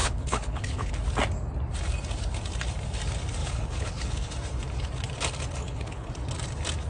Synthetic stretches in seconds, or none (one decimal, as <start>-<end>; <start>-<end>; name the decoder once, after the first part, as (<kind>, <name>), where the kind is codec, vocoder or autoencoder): 0.0-0.9 (codec, HILCodec); 3.4-4.3; 5.6-6.1

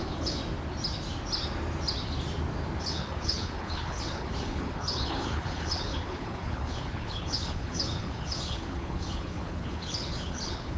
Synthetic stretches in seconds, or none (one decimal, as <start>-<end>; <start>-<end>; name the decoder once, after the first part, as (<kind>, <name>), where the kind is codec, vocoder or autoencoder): 0.0-0.4 (codec, HILCodec); 2.8-10.8

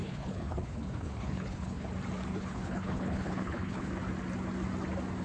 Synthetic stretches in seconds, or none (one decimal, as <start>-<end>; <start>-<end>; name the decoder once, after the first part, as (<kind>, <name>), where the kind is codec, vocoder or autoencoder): 0.0-1.9 (codec, HILCodec); 2.3-3.9

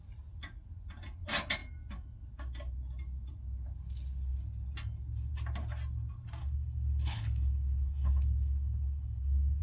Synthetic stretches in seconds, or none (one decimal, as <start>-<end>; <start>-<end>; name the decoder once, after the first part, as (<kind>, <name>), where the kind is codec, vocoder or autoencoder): 6.4-9.6 (codec, HILCodec)

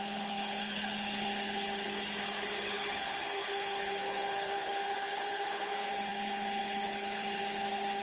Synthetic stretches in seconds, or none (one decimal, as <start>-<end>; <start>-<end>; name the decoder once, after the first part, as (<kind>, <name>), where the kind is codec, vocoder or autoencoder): 0.0-8.0 (codec, HILCodec)